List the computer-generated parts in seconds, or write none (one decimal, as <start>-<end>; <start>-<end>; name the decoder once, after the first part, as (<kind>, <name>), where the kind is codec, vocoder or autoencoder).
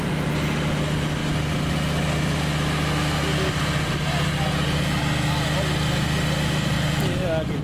none